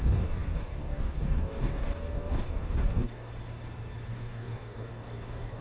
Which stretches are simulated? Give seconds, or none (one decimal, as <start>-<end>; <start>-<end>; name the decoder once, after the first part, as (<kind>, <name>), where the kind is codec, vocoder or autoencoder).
0.0-3.3 (codec, DAC); 4.1-5.6